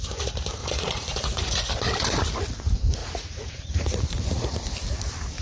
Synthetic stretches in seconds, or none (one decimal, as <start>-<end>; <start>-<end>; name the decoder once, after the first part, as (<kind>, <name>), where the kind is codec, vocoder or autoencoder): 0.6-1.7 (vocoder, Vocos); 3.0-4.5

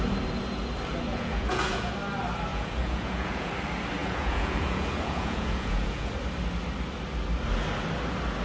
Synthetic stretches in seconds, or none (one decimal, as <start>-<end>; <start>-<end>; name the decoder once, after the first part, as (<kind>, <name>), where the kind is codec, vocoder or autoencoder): 1.1-1.9 (vocoder, Vocos); 2.5-3.5; 4.0-6.1

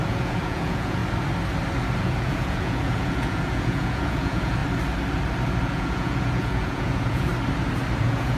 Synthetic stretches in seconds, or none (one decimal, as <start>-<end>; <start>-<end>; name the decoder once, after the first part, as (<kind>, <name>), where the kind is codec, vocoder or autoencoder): 0.0-1.0 (vocoder, Vocos); 2.0-4.6; 5.6-7.3; 8.0-8.4

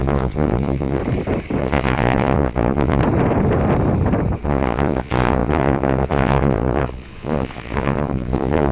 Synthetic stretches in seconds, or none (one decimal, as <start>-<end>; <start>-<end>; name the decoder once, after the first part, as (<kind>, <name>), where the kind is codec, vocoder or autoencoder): 0.0-1.0 (vocoder, Vocos); 1.6-3.0; 4.4-8.7